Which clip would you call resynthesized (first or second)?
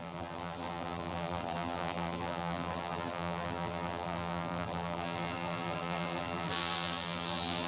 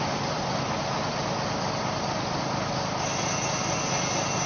first